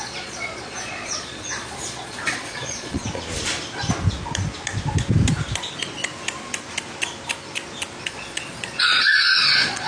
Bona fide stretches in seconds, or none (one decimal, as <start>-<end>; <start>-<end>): 3.0-8.0